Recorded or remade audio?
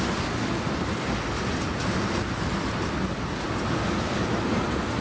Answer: recorded